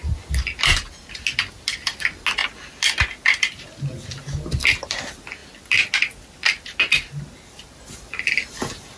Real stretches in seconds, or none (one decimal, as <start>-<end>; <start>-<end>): 0.0-9.0